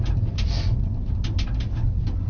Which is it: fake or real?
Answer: fake